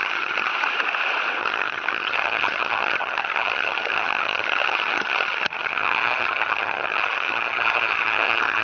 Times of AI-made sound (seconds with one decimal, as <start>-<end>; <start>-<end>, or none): 0.0-0.5; 1.4-8.6